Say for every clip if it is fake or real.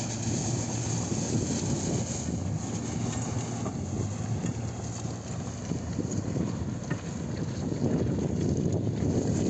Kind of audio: real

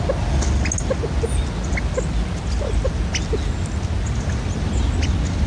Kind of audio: real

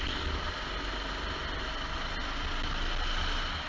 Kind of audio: real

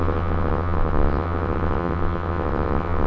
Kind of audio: fake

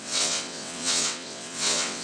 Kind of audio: fake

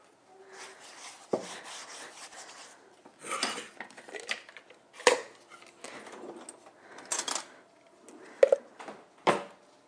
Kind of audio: real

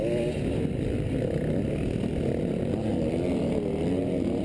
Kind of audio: real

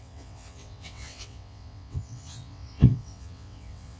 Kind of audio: fake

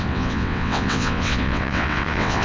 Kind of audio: fake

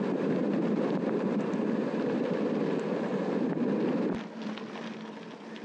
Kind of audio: real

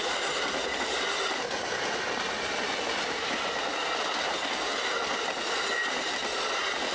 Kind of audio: real